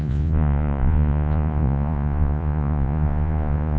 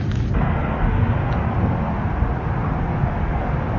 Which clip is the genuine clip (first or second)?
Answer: second